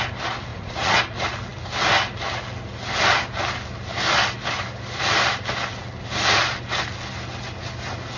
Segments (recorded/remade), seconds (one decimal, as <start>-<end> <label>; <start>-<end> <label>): 0.0-0.5 recorded; 0.5-1.0 remade; 1.0-8.2 recorded